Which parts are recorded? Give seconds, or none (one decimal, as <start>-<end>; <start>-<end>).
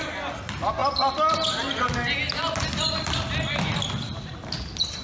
0.0-5.0